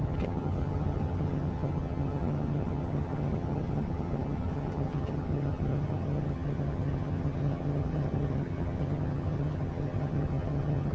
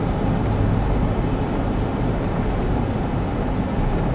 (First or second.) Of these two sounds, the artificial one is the first